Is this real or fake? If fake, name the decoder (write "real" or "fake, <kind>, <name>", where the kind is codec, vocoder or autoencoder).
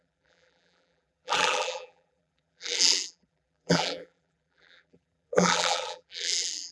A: fake, vocoder, BigVGAN v2